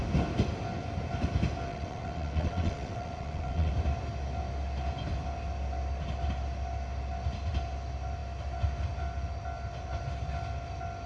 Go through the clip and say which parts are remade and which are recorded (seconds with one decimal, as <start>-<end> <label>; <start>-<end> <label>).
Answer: 0.0-1.7 recorded; 1.7-3.7 remade; 3.7-11.1 recorded